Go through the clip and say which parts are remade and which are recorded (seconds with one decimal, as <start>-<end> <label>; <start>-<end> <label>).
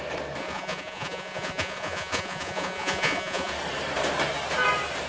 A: 0.0-0.4 recorded; 0.4-3.5 remade; 3.5-5.1 recorded